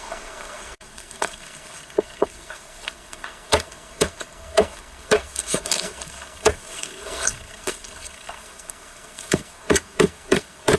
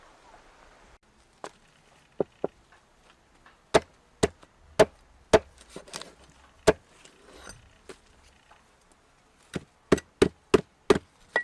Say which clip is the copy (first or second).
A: first